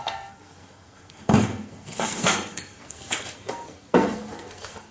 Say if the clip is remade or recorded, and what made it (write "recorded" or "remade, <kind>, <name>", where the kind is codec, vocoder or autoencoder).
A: remade, codec, SNAC